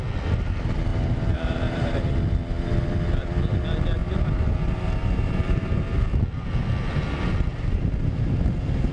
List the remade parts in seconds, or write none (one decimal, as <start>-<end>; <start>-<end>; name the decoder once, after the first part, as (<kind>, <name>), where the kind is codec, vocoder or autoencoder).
0.9-2.1 (vocoder, BigVGAN v2); 4.0-6.0; 7.5-8.4